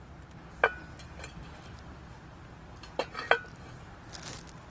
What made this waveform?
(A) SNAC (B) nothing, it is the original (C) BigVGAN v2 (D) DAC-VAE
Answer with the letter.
B